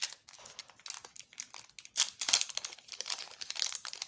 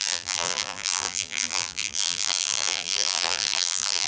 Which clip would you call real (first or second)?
first